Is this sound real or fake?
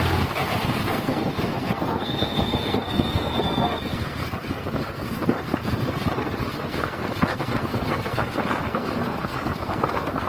fake